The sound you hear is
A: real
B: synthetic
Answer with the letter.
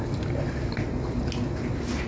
A